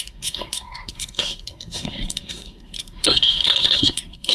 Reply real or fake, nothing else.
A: fake